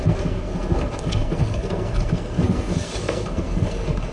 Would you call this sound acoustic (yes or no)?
no